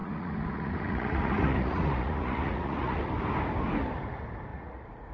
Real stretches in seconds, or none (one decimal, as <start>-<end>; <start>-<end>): 3.1-4.5